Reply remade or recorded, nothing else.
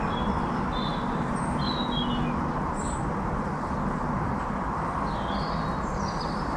recorded